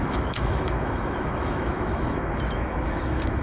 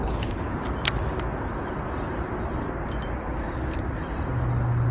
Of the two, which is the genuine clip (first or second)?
second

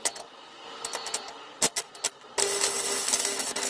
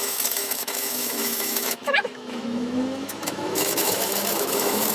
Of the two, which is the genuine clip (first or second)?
first